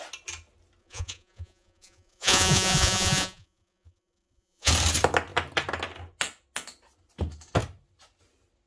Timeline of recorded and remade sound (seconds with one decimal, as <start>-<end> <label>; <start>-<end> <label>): 0.0-0.8 recorded; 0.8-4.7 remade; 4.7-8.7 recorded